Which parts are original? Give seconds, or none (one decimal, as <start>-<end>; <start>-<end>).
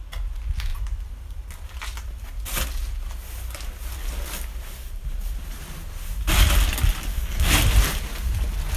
0.0-7.1; 7.6-8.8